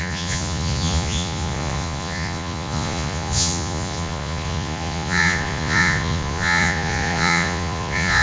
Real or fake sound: fake